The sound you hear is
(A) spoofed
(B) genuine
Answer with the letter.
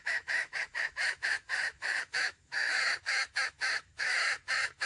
A